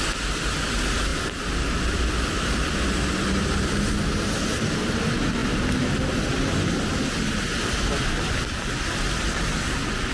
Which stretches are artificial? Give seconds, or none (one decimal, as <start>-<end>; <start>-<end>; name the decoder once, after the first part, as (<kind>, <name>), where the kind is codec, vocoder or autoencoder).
none